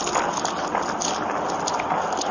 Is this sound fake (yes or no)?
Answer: no